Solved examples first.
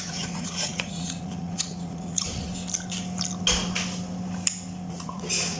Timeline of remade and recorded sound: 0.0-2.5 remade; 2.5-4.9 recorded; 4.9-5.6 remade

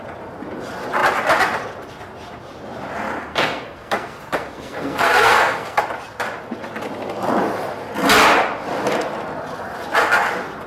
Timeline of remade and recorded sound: 0.0-3.2 recorded; 3.2-5.8 remade; 5.8-10.7 recorded

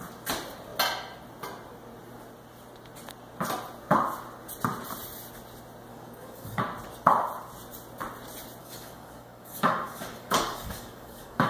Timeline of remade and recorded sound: 0.0-5.9 recorded; 5.9-6.6 remade; 6.6-8.6 recorded; 8.6-11.5 remade

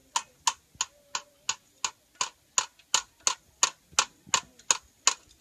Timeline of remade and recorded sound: 0.0-5.4 recorded